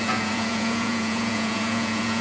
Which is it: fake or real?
fake